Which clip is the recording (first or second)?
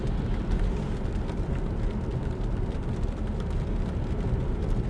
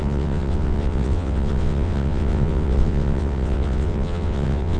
first